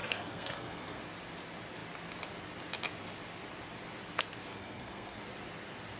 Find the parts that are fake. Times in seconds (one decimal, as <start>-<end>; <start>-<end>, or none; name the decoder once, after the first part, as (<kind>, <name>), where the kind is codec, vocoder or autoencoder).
0.0-1.0 (codec, SNAC); 4.5-5.2